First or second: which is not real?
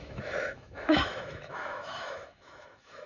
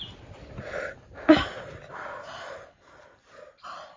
first